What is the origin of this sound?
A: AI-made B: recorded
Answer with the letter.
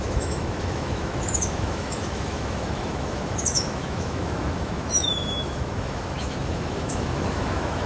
A